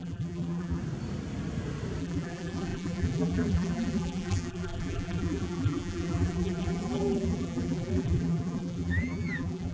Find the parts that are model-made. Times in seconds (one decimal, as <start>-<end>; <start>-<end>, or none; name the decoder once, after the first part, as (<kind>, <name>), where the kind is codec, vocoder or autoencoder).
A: 0.0-0.8 (vocoder, BigVGAN v2); 2.0-9.7